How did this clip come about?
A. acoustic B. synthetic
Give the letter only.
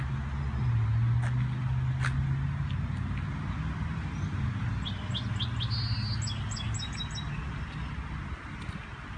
A